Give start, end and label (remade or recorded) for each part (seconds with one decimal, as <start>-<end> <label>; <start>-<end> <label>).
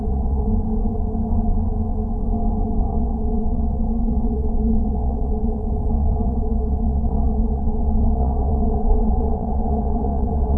0.0-0.5 remade; 0.5-2.8 recorded; 2.8-10.6 remade